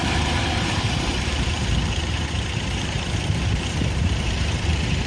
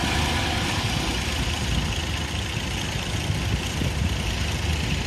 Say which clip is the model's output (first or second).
first